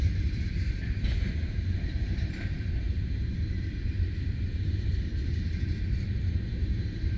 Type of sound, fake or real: fake